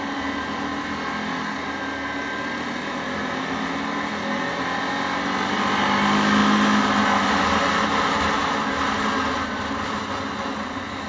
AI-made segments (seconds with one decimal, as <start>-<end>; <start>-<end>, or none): none